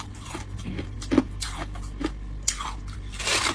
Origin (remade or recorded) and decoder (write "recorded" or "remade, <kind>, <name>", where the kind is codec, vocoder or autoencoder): recorded